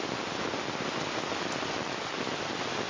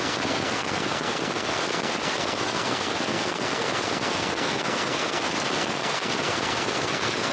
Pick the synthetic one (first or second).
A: second